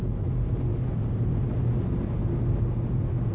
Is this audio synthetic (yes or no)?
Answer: no